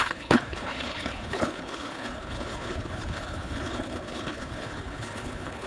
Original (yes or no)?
no